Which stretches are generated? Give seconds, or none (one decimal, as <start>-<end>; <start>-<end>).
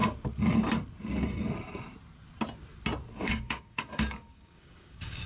3.2-5.3